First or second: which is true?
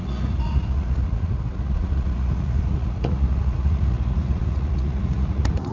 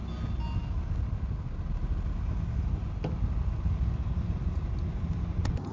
second